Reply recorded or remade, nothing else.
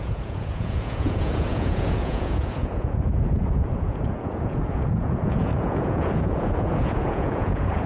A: remade